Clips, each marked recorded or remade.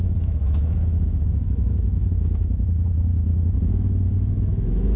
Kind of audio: remade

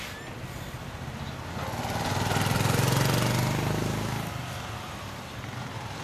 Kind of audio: recorded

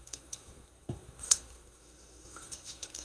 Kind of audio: remade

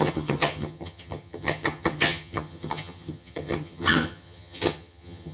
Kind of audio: remade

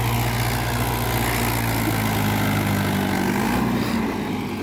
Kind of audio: recorded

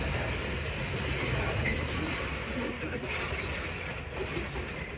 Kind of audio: recorded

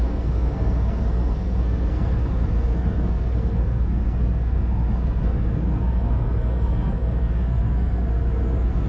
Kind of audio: remade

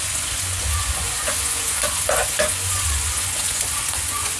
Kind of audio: remade